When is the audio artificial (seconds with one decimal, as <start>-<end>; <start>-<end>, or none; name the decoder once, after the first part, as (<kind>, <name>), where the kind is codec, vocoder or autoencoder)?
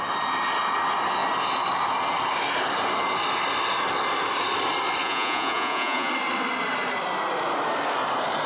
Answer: 5.0-6.1 (vocoder, Vocos)